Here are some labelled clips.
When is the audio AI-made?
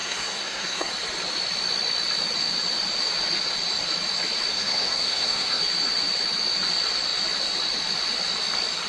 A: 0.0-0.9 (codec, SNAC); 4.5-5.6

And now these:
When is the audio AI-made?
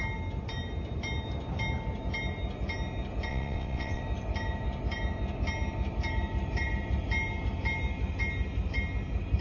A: 3.3-4.0 (vocoder, WaveNeXt)